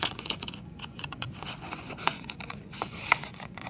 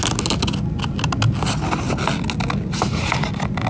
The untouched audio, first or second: second